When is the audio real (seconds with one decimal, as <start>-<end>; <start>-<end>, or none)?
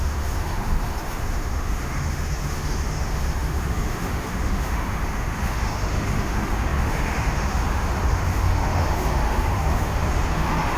none